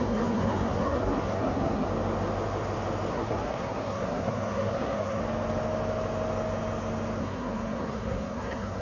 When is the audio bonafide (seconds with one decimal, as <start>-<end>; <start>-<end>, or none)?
1.9-3.1; 5.2-7.2